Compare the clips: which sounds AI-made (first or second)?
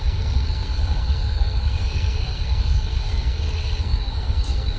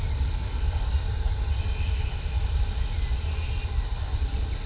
first